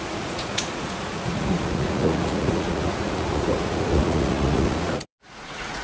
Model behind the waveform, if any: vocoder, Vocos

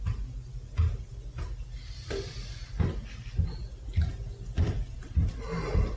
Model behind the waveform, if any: none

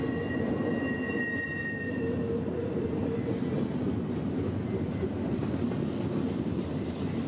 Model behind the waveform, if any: none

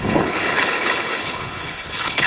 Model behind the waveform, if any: codec, HILCodec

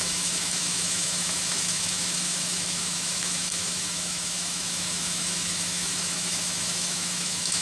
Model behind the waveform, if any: autoencoder, DAC-VAE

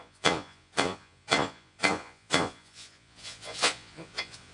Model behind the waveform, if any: vocoder, Vocos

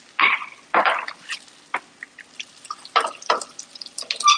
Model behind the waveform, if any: none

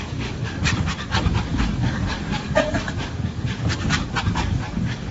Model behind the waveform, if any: codec, DAC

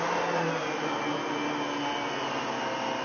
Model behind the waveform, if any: none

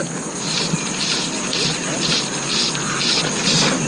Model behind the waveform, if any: none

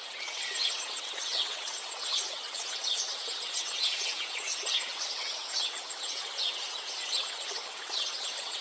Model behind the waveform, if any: vocoder, WaveNeXt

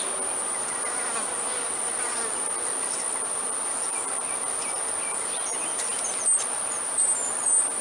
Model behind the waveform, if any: none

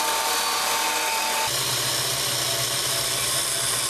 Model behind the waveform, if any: none